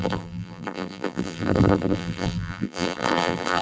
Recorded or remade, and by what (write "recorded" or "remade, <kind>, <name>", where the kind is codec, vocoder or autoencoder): remade, vocoder, BigVGAN v2